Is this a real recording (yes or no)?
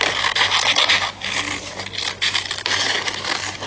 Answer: yes